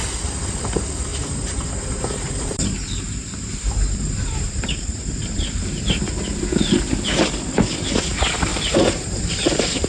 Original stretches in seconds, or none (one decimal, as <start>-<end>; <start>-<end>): 0.0-1.1; 6.0-8.5